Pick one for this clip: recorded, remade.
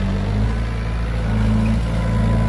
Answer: recorded